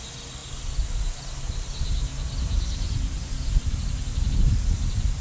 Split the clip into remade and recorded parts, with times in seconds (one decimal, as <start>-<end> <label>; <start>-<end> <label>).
0.0-5.2 recorded